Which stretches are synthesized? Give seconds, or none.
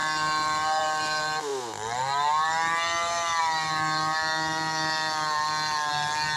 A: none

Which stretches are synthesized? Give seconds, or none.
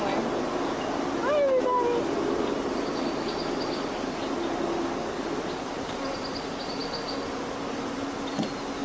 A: none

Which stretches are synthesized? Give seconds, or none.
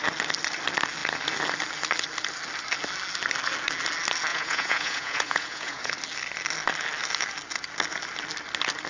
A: 4.3-5.9 (vocoder, Vocos)